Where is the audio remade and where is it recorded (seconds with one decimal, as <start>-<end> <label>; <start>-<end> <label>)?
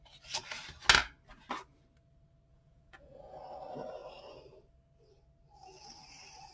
0.0-2.5 recorded; 2.5-3.4 remade; 3.4-6.5 recorded